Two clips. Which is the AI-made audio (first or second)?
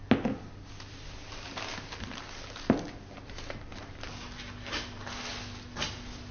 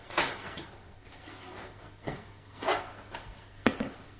second